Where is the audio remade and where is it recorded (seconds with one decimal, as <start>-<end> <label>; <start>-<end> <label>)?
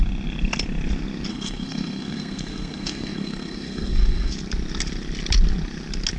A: 0.0-1.3 recorded; 1.3-4.3 remade; 4.3-6.2 recorded